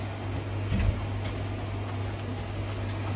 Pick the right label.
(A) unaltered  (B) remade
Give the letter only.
A